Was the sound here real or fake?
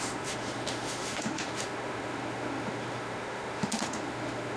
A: fake